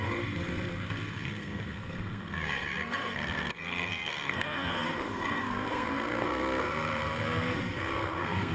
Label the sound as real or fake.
fake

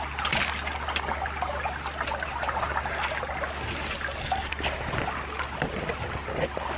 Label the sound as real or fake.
real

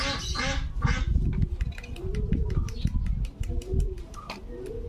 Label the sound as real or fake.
real